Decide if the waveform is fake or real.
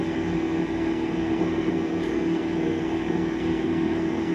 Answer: fake